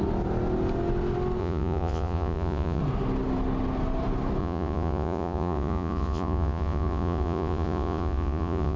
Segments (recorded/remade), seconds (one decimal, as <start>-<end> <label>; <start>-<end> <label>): 0.0-1.4 recorded; 1.4-2.8 remade; 2.8-4.4 recorded; 4.4-8.8 remade